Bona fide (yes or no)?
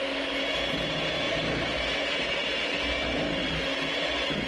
yes